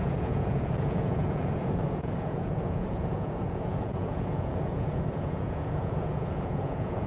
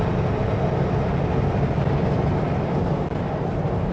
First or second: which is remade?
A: first